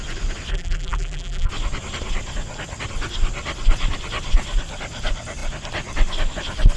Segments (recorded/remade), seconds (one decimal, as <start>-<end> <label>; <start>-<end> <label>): 0.0-0.5 recorded; 0.5-1.5 remade; 1.5-6.8 recorded

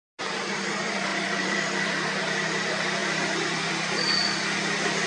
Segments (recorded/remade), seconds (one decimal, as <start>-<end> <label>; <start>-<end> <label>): 0.0-1.1 recorded; 1.1-2.2 remade; 2.2-3.0 recorded; 3.0-3.7 remade; 3.7-5.1 recorded

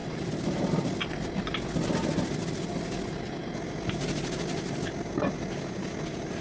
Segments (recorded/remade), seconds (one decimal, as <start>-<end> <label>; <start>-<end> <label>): 0.0-0.8 remade; 0.8-6.4 recorded

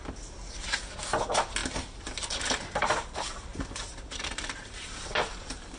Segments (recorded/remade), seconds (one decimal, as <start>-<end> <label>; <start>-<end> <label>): 0.0-3.5 recorded; 3.5-4.7 remade; 4.7-5.8 recorded

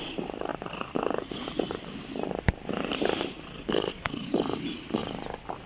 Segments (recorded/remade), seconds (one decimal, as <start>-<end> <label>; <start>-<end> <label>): 0.0-5.0 remade; 5.0-5.7 recorded

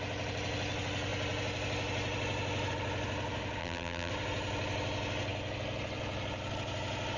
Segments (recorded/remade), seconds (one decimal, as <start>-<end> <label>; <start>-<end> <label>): 0.0-3.6 recorded; 3.6-4.1 remade; 4.1-7.2 recorded